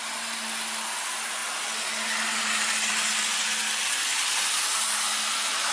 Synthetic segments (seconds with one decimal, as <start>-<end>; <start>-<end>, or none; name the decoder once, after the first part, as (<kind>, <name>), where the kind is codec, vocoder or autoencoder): none